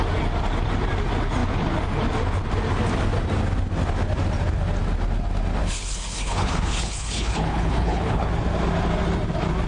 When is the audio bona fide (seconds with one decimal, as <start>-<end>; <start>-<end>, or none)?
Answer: 0.0-5.6; 8.3-9.7